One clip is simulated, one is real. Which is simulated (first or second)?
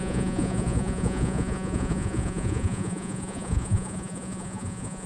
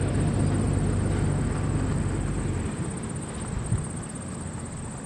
first